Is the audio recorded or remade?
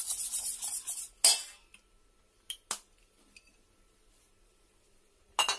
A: recorded